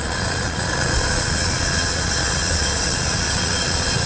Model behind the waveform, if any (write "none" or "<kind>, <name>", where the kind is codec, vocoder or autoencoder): vocoder, Vocos